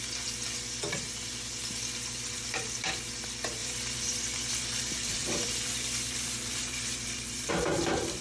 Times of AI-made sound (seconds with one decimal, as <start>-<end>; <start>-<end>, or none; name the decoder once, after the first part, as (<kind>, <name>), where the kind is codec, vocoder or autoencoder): 3.6-7.5 (vocoder, BigVGAN v2)